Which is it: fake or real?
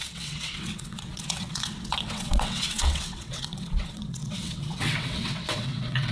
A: fake